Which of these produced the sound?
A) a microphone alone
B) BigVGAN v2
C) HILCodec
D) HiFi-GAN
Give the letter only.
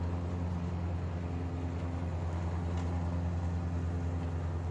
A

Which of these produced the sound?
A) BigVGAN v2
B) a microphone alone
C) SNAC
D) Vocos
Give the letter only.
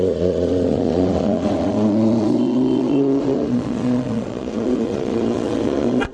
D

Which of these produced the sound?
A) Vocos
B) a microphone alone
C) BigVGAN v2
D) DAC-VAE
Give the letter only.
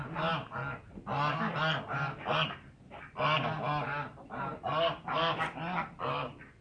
B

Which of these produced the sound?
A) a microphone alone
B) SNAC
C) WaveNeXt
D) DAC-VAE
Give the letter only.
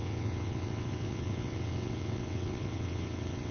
C